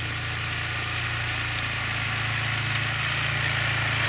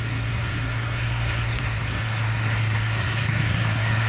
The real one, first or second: first